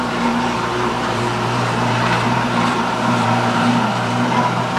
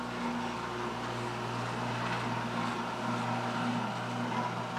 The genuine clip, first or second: second